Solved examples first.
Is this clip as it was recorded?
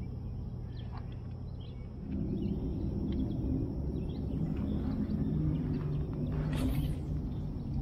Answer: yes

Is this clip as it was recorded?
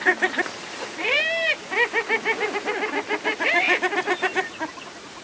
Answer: no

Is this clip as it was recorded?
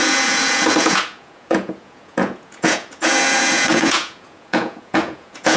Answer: no